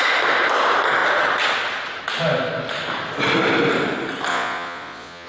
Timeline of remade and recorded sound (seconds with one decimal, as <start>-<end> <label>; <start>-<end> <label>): 0.0-4.3 recorded; 4.3-5.3 remade